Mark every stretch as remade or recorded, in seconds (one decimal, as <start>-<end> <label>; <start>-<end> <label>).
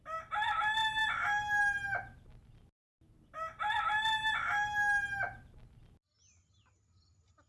0.0-7.5 recorded